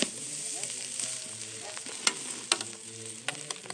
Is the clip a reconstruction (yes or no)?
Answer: no